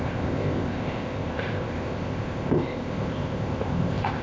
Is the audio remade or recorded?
remade